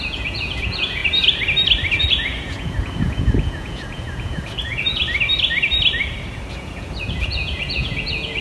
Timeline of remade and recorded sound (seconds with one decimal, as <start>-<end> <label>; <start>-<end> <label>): 0.0-1.0 remade; 1.0-2.1 recorded; 2.1-5.0 remade; 5.0-6.5 recorded; 6.5-8.4 remade